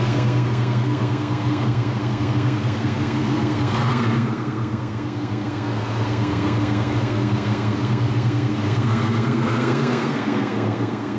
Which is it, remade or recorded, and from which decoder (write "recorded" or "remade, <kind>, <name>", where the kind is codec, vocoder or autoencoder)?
remade, codec, SNAC